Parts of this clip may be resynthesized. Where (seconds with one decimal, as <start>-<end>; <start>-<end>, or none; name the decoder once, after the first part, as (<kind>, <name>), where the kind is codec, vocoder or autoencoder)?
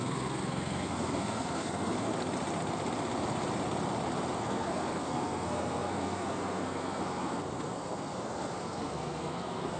0.0-2.1 (codec, SNAC); 4.4-9.8